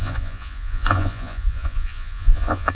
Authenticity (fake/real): fake